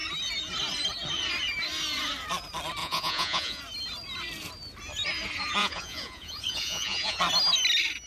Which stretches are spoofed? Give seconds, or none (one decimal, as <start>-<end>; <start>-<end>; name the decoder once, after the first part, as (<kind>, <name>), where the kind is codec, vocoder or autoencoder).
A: 2.8-3.6 (vocoder, Vocos); 5.6-7.2